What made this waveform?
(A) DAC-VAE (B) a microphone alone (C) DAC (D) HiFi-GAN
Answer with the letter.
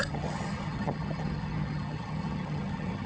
D